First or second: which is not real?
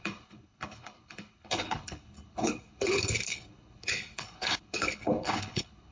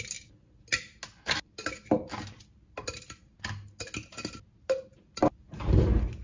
first